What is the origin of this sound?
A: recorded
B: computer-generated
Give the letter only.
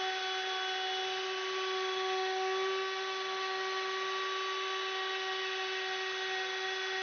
A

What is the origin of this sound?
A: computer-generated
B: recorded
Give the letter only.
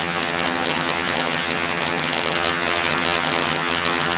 A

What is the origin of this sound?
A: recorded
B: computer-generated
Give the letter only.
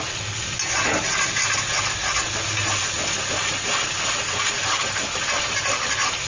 A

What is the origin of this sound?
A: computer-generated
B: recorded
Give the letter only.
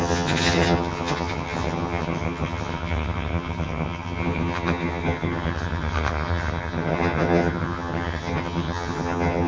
A